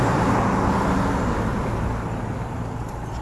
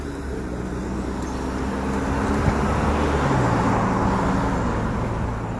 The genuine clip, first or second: second